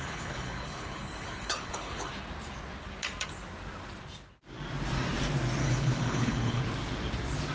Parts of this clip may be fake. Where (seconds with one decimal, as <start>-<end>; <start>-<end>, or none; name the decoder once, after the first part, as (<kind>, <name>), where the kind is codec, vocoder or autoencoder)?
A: 0.0-2.1 (codec, HILCodec); 5.6-6.6